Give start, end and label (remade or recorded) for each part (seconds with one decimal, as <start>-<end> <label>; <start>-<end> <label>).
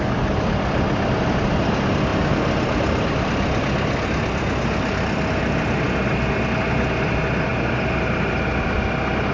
0.0-9.3 recorded